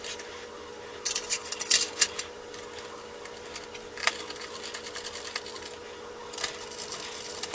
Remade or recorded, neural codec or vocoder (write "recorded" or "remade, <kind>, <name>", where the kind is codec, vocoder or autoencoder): recorded